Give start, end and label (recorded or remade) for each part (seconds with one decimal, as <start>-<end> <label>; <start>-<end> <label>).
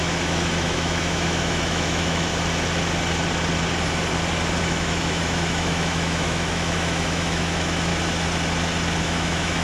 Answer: 0.0-2.3 remade; 2.3-4.6 recorded; 4.6-7.9 remade; 7.9-9.0 recorded; 9.0-9.6 remade